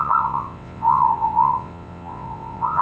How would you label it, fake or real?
fake